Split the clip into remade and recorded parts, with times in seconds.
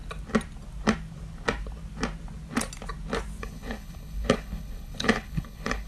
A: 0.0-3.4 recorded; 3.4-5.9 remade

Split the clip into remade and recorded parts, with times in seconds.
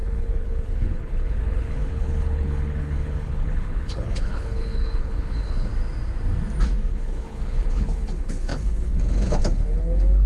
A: 0.0-5.7 remade; 5.7-6.9 recorded; 6.9-10.3 remade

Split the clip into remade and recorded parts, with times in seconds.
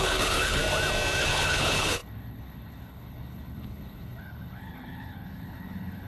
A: 0.0-0.6 remade; 0.6-1.2 recorded; 1.2-6.1 remade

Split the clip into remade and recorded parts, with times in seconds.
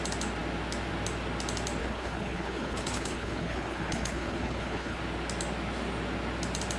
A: 0.0-1.8 recorded; 1.8-5.0 remade; 5.0-6.8 recorded